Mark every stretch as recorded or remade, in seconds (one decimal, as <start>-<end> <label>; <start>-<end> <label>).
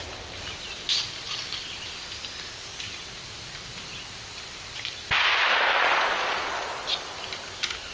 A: 0.0-5.7 recorded; 5.7-7.0 remade; 7.0-7.9 recorded